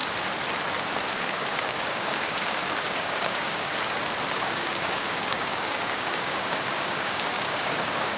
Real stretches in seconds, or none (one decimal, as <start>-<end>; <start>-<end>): 0.0-1.1; 3.7-4.3